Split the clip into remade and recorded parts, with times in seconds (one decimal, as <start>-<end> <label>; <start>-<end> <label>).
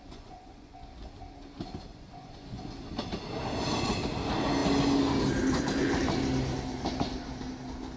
0.0-0.7 remade; 0.7-1.9 recorded; 1.9-2.6 remade; 2.6-8.0 recorded